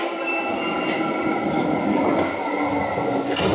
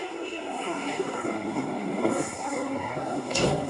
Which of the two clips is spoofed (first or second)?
second